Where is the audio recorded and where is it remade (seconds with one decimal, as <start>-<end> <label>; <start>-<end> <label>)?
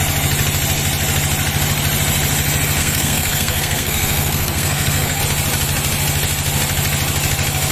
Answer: 0.0-2.8 recorded; 2.8-5.2 remade; 5.2-7.7 recorded